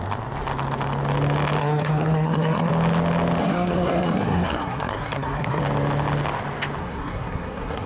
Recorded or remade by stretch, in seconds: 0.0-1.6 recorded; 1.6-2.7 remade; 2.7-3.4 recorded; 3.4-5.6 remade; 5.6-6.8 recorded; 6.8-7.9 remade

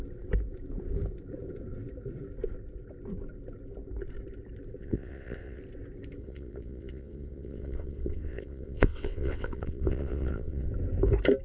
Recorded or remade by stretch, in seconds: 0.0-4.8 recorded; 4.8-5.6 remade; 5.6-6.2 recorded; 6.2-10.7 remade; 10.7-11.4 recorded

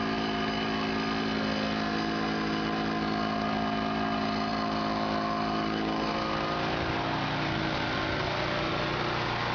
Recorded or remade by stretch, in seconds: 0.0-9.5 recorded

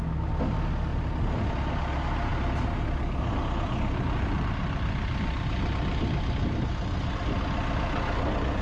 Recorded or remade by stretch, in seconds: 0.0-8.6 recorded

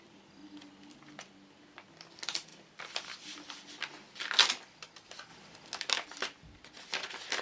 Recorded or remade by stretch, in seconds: 0.0-0.4 remade; 0.4-1.9 recorded; 1.9-2.5 remade; 2.5-4.8 recorded; 4.8-5.3 remade; 5.3-5.8 recorded; 5.8-7.4 remade

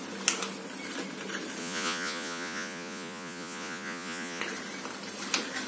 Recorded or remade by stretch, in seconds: 0.0-1.6 recorded; 1.6-4.4 remade; 4.4-5.7 recorded

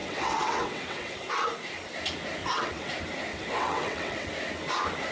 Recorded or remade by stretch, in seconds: 0.0-1.3 remade; 1.3-2.4 recorded; 2.4-2.9 remade; 2.9-3.3 recorded; 3.3-4.3 remade; 4.3-5.1 recorded